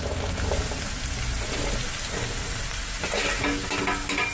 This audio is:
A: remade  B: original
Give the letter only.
B